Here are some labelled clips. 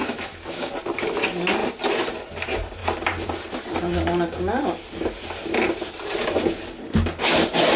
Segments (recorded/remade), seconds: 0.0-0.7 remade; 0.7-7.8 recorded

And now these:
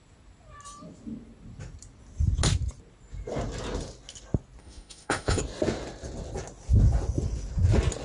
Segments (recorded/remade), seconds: 0.0-4.6 recorded; 4.6-5.4 remade; 5.4-8.0 recorded

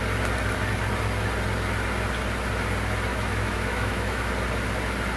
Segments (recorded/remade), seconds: 0.0-3.1 recorded; 3.1-4.3 remade; 4.3-5.2 recorded